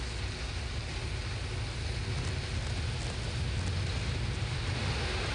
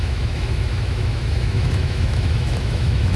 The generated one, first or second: second